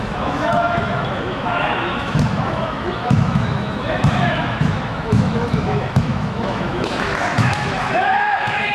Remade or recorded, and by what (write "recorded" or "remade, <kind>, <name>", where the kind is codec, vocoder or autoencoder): remade, autoencoder, DAC-VAE